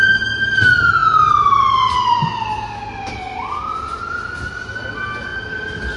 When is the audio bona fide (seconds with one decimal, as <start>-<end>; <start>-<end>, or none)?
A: 0.0-6.0